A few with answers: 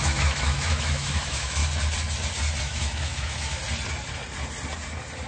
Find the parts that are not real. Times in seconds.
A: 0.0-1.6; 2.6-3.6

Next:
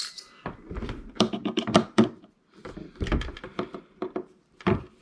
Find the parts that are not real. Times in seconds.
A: 0.0-5.0

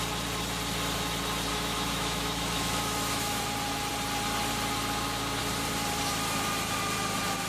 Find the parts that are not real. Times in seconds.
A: 1.5-3.4

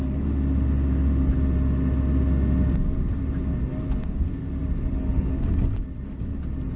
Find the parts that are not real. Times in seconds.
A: none

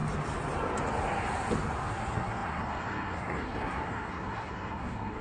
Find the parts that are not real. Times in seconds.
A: 1.9-5.2